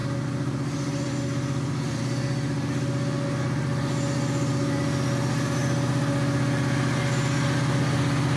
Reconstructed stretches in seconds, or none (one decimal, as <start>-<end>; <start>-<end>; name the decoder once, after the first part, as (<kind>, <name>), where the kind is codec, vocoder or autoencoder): 0.0-2.0 (vocoder, BigVGAN v2)